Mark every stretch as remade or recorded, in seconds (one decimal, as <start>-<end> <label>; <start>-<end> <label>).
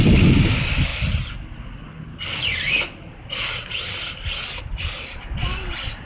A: 0.0-6.1 recorded